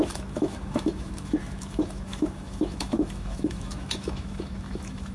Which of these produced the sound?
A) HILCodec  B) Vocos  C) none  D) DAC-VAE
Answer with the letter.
D